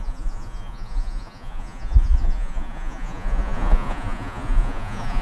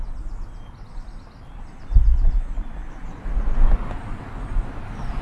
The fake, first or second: first